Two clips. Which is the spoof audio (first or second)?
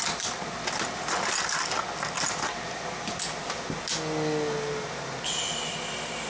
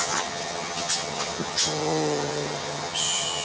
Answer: second